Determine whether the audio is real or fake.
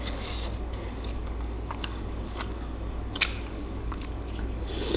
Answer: fake